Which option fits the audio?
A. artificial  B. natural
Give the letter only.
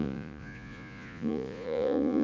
A